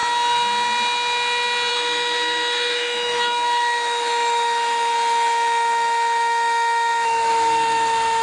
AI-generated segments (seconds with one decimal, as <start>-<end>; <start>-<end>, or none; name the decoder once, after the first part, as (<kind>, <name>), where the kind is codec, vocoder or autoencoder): 1.7-8.2 (autoencoder, DAC-VAE)